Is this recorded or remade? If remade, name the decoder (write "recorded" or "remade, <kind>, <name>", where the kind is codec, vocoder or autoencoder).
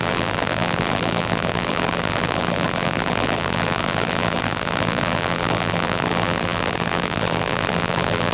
remade, vocoder, BigVGAN v2